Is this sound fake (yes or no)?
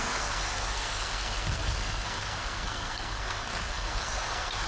yes